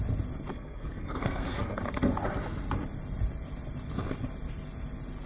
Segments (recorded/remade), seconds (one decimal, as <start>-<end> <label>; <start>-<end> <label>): 0.0-0.5 recorded; 0.5-1.8 remade; 1.8-5.3 recorded